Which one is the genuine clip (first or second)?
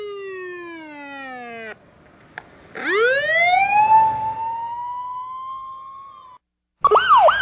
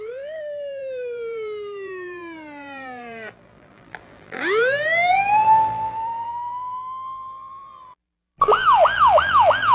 first